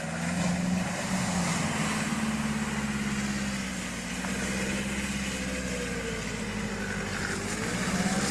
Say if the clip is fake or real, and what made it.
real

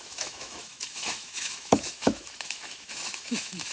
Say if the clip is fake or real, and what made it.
fake, autoencoder, DAC-VAE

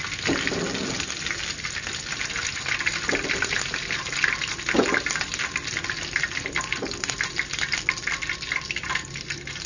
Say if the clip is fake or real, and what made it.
real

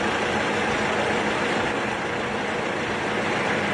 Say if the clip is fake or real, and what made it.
real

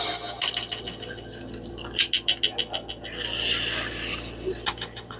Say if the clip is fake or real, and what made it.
real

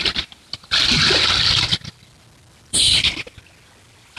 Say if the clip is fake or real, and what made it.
real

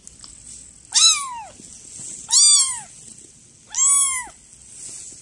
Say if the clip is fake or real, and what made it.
real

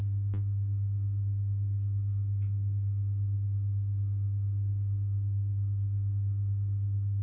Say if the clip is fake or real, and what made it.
real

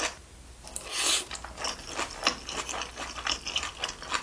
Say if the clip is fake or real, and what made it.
real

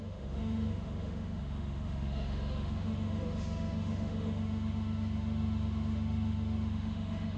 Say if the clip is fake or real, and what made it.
fake, autoencoder, DAC-VAE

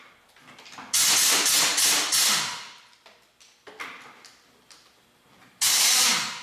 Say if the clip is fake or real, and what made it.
real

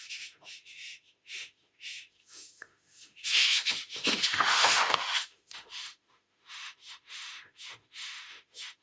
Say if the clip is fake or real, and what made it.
fake, autoencoder, DAC-VAE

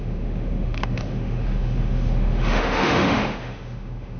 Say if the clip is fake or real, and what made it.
fake, autoencoder, DAC-VAE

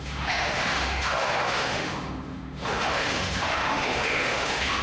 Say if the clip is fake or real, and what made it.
fake, autoencoder, DAC-VAE